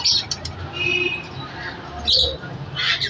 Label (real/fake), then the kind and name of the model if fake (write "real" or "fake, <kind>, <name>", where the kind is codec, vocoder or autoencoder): real